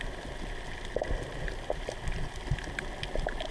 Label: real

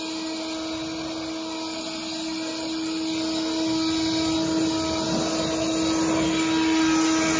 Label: real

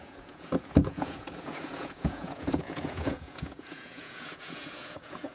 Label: fake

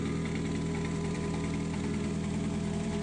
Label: real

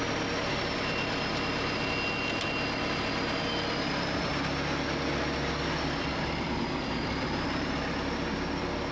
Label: real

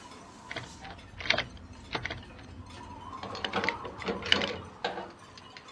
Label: real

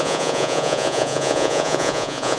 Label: fake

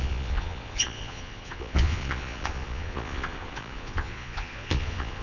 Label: fake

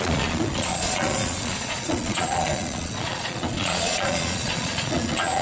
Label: fake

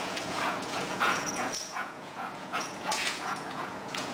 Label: fake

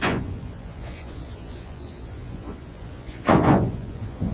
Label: fake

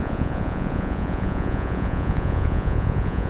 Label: fake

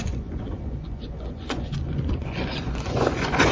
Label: fake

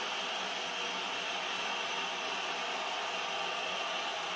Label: real